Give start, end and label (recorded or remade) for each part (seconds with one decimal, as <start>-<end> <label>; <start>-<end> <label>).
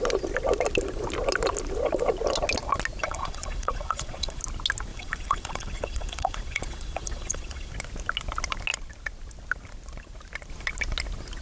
0.0-3.0 recorded; 3.0-4.4 remade; 4.4-4.9 recorded; 4.9-7.7 remade; 7.7-11.4 recorded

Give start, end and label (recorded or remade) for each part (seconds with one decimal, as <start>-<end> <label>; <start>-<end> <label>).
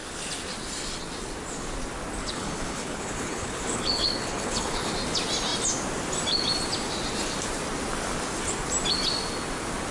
0.0-2.2 recorded; 2.2-4.9 remade; 4.9-9.9 recorded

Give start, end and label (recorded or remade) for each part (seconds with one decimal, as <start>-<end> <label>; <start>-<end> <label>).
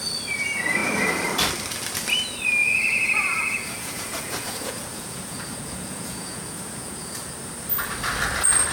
0.0-2.6 recorded; 2.6-7.3 remade; 7.3-8.7 recorded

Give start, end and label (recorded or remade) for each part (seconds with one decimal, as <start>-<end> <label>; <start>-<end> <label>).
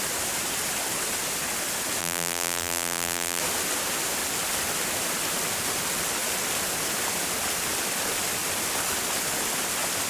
0.0-2.0 recorded; 2.0-3.4 remade; 3.4-10.1 recorded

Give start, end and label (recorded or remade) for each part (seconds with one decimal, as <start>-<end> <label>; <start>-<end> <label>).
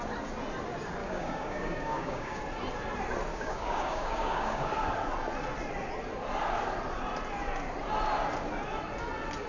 0.0-1.0 recorded; 1.0-2.4 remade; 2.4-3.3 recorded; 3.3-4.7 remade; 4.7-9.5 recorded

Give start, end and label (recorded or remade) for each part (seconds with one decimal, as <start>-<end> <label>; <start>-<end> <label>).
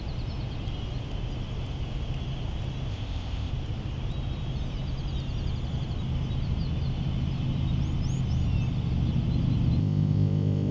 0.0-2.9 recorded; 2.9-3.5 remade; 3.5-9.8 recorded; 9.8-10.7 remade